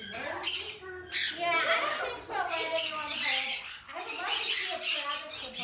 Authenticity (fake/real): real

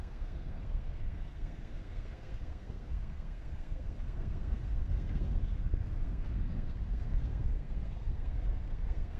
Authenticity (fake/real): fake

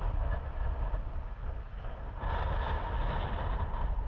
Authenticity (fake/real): real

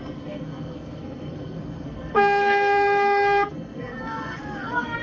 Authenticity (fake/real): fake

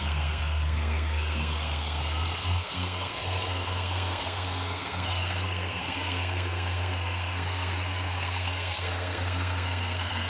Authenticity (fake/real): fake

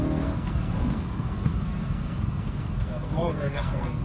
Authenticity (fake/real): fake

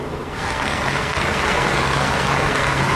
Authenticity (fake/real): fake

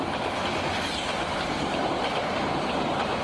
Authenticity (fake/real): real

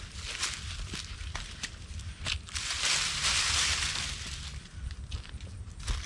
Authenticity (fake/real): real